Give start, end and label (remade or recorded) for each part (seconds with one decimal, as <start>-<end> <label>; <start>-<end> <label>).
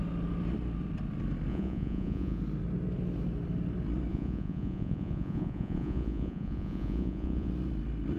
0.0-1.5 recorded; 1.5-2.4 remade; 2.4-4.1 recorded; 4.1-7.5 remade; 7.5-8.2 recorded